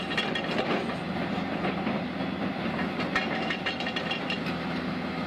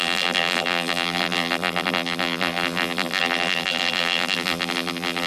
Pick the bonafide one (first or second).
first